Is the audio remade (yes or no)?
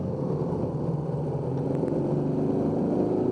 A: no